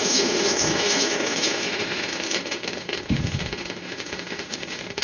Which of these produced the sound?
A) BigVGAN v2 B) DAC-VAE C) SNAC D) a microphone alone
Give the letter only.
B